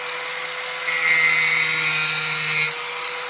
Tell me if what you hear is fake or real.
real